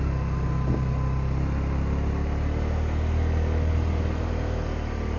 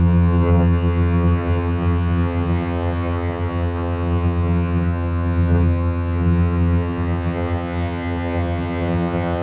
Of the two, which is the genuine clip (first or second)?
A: first